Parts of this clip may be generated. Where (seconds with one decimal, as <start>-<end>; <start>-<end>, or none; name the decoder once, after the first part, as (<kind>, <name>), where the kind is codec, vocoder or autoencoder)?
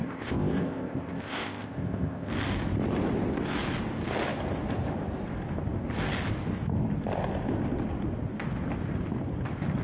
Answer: 0.0-2.3 (codec, ZipCodec)